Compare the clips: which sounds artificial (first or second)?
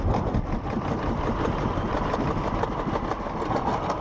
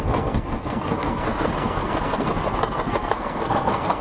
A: second